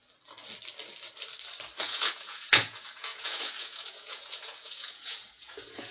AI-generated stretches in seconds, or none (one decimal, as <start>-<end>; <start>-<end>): 1.8-5.9